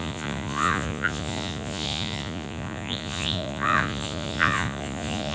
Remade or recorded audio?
remade